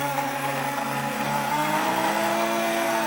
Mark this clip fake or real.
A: fake